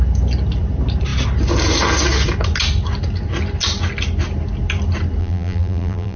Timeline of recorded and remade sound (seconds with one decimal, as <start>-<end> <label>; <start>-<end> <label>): 0.0-5.2 recorded; 5.2-6.2 remade